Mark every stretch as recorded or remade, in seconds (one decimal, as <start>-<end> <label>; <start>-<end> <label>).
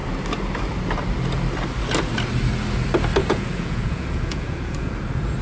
0.0-3.2 recorded; 3.2-4.9 remade; 4.9-5.4 recorded